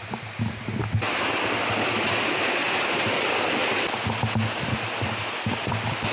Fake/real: real